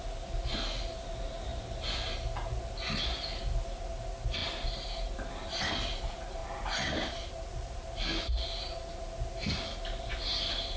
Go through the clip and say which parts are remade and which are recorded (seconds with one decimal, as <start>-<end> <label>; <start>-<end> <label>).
0.0-10.8 recorded